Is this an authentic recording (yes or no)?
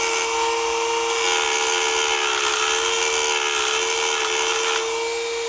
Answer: yes